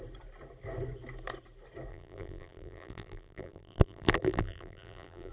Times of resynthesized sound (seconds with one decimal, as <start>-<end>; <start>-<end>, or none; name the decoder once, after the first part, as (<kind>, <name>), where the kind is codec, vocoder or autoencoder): 1.9-5.3 (vocoder, BigVGAN v2)